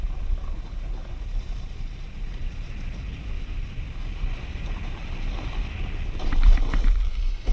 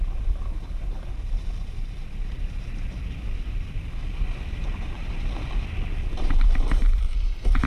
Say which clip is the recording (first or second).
first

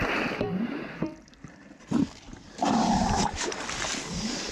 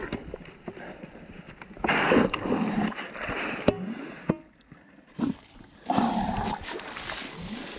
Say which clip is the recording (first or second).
second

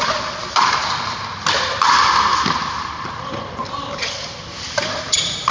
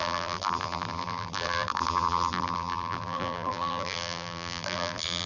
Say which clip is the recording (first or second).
first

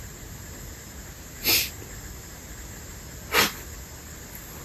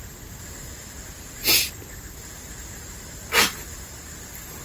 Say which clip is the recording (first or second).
first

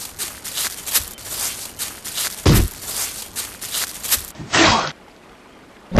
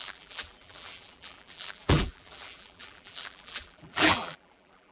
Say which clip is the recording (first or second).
first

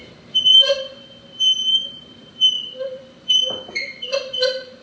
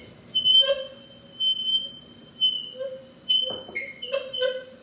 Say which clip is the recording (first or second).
second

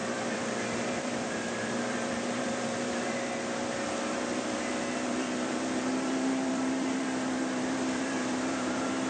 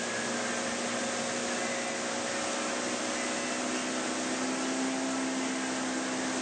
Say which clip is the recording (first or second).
second